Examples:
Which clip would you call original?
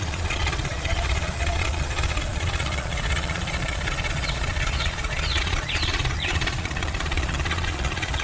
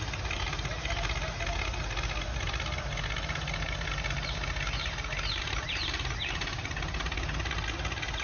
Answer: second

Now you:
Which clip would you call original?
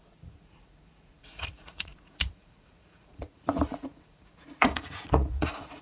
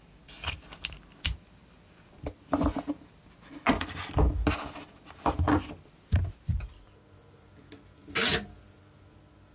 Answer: second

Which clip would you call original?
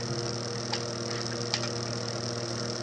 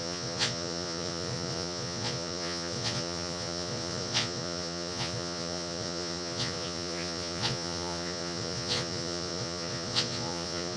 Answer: first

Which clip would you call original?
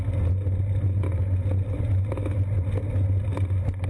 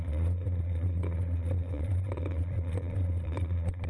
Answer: first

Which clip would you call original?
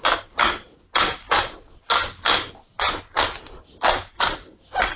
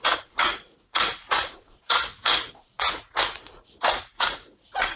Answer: first